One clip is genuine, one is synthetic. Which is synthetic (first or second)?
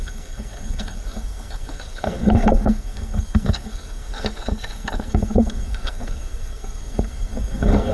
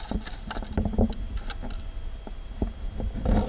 first